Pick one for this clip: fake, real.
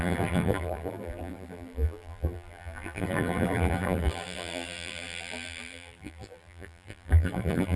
fake